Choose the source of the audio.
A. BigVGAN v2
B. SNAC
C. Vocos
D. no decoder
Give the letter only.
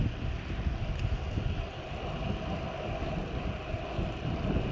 D